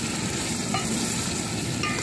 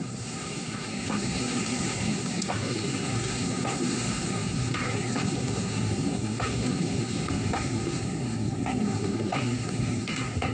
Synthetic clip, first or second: second